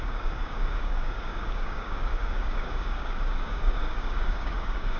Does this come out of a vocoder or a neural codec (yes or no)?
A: yes